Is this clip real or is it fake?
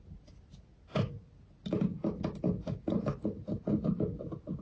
real